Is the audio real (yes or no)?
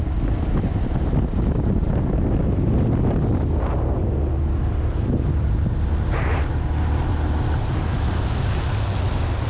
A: yes